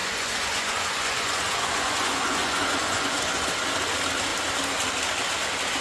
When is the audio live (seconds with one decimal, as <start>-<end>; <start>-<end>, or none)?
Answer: 3.5-5.8